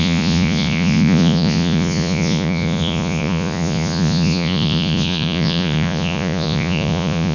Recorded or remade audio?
remade